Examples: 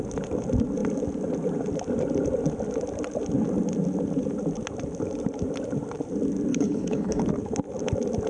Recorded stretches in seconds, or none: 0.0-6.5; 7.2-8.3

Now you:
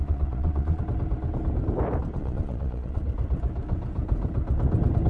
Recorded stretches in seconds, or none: 0.8-2.2; 3.0-5.1

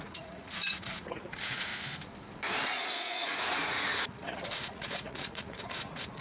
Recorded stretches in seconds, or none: 1.7-2.6